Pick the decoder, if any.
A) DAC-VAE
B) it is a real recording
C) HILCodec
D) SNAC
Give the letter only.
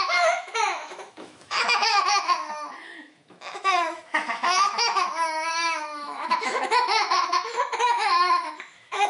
A